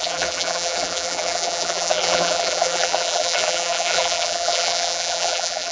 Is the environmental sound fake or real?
fake